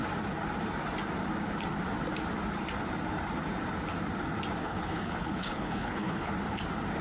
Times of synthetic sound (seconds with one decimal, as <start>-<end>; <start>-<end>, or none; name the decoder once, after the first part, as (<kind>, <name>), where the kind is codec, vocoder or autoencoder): 4.6-6.3 (codec, HILCodec)